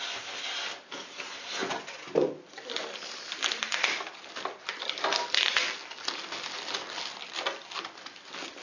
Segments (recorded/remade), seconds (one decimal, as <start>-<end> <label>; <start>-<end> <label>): 0.0-8.6 recorded